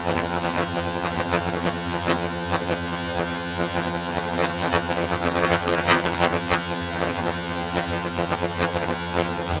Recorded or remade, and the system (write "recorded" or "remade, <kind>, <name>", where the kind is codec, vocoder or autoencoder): remade, vocoder, HiFi-GAN